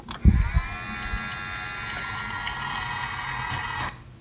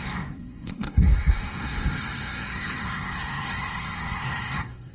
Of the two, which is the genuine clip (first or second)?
first